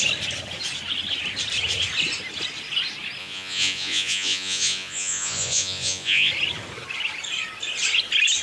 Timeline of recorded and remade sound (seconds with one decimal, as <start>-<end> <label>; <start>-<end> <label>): 0.0-3.2 recorded; 3.2-6.3 remade; 6.3-8.4 recorded